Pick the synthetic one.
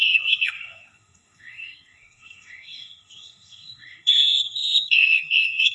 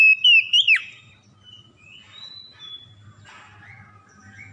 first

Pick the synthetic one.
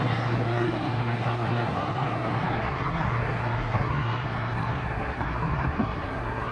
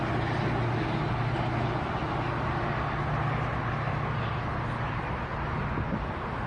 first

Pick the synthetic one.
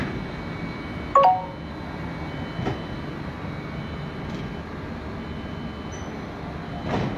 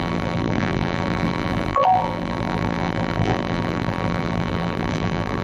second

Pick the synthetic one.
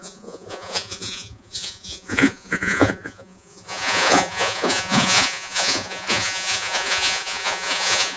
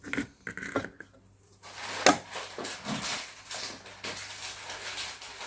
first